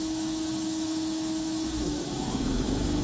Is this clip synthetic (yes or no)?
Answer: yes